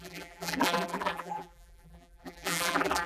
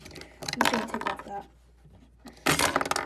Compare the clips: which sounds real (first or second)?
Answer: second